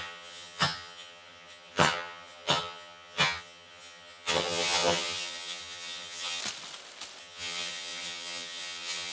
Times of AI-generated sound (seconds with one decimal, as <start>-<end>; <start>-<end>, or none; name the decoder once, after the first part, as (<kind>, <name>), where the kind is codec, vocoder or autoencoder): 0.0-6.4 (vocoder, HiFi-GAN); 7.2-9.1